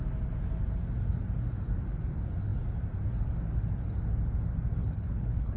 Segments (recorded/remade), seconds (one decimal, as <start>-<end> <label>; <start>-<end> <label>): 0.0-4.8 recorded; 4.8-5.6 remade